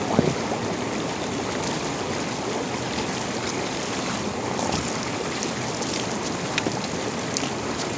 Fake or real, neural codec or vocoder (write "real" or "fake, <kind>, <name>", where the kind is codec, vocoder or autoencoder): real